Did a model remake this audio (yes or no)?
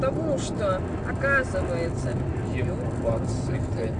no